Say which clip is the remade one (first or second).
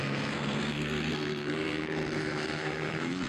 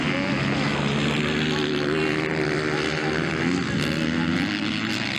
first